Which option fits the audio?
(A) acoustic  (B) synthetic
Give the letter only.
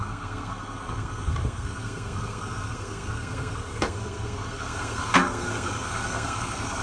B